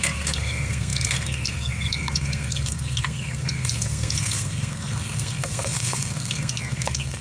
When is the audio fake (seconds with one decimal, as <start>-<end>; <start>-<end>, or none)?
0.0-7.2